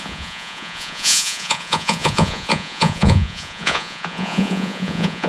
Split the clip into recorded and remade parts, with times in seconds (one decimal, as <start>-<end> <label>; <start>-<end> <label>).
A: 0.0-5.3 remade